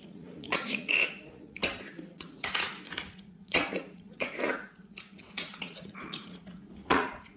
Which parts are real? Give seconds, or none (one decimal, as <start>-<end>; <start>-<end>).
1.6-2.1

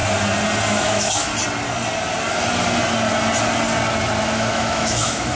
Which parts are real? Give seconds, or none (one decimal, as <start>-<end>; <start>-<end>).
0.0-0.7; 1.3-4.2

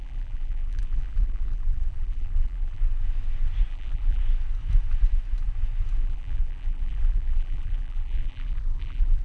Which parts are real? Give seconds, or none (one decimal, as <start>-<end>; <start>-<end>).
2.8-3.7; 4.2-6.0

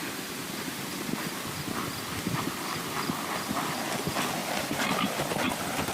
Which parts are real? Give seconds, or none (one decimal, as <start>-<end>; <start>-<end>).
0.0-0.4; 3.9-4.4; 5.4-5.9

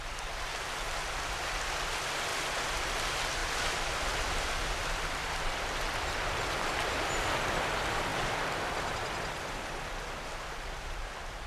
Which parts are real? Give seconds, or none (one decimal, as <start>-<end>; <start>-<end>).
2.3-2.9; 8.1-10.6

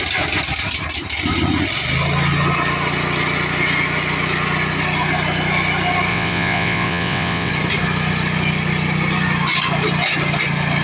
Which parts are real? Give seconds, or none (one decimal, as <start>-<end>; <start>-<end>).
0.0-6.1; 7.5-10.8

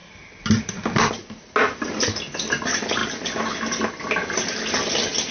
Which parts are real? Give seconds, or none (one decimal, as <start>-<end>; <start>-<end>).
0.0-5.3

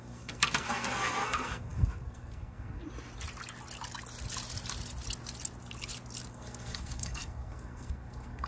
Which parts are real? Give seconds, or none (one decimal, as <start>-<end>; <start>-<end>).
2.8-6.3